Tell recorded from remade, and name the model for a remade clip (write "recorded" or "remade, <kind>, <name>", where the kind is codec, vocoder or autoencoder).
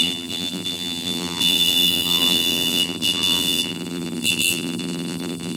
remade, vocoder, BigVGAN v2